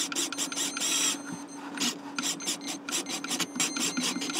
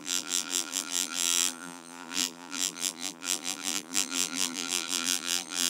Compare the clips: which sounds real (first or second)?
first